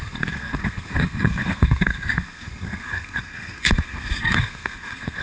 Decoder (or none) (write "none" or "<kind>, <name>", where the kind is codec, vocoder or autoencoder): codec, SNAC